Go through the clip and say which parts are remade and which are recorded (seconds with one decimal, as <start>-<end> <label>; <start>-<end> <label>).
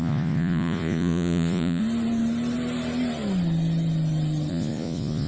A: 0.0-1.8 remade; 1.8-4.5 recorded; 4.5-5.3 remade